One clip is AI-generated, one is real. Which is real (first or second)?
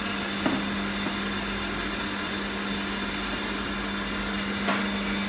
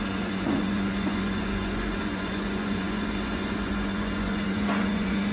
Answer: first